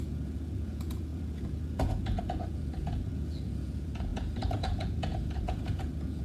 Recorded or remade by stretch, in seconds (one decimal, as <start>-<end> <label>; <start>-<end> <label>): 0.0-6.2 remade

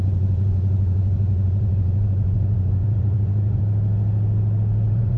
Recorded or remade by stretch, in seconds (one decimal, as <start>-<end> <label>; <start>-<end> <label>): 0.0-3.6 remade; 3.6-4.8 recorded; 4.8-5.2 remade

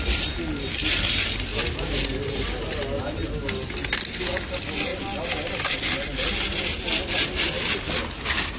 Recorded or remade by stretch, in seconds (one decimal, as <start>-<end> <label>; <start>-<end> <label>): 0.0-8.6 recorded

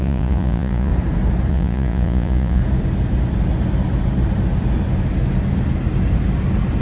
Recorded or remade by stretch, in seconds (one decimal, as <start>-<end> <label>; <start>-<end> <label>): 0.0-0.9 remade; 0.9-1.5 recorded; 1.5-2.6 remade; 2.6-6.8 recorded

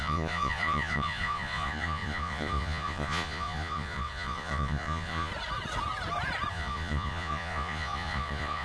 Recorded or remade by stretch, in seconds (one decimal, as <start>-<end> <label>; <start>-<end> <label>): 0.0-5.3 remade; 5.3-6.5 recorded; 6.5-8.6 remade

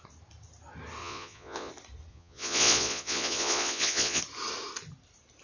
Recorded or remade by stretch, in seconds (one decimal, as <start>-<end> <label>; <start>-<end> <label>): 0.0-1.0 recorded; 1.0-1.7 remade; 1.7-2.1 recorded; 2.1-4.2 remade; 4.2-5.4 recorded

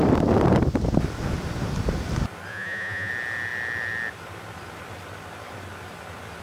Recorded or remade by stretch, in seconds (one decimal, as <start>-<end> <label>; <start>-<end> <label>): 0.0-2.5 recorded; 2.5-3.1 remade; 3.1-6.4 recorded

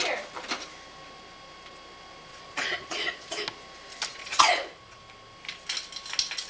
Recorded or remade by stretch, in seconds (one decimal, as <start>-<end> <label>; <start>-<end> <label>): 0.0-2.3 recorded; 2.3-3.4 remade; 3.4-4.1 recorded; 4.1-5.0 remade; 5.0-6.5 recorded